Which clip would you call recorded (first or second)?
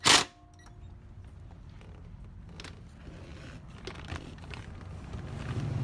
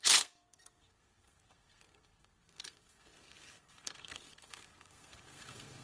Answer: first